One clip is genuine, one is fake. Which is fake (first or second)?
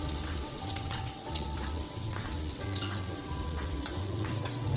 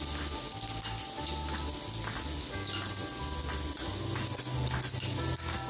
first